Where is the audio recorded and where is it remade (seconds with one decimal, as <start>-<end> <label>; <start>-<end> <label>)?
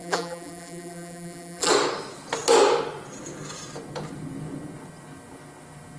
0.0-1.7 remade; 1.7-6.0 recorded